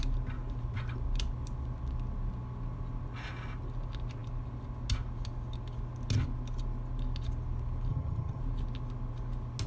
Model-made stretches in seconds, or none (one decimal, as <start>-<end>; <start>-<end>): 7.9-8.4

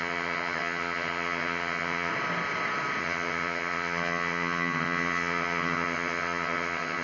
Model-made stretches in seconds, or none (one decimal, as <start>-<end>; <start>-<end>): 0.0-2.1; 3.0-7.0

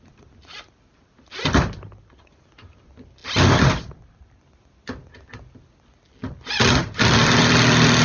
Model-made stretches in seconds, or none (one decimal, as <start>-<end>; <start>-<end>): none